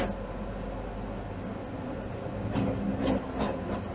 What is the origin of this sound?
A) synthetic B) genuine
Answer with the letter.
B